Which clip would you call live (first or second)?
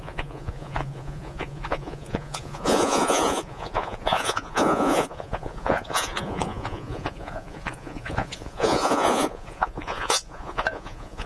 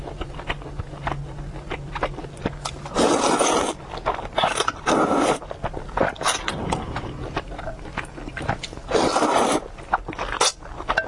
second